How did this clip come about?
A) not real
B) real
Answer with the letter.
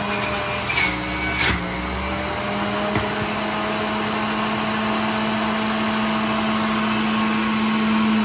B